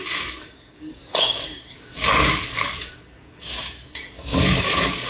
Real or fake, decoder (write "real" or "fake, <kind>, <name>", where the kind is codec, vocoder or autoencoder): fake, codec, DAC